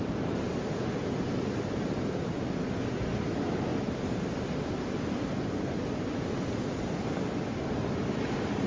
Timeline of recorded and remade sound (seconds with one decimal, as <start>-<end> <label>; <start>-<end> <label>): 0.0-8.7 recorded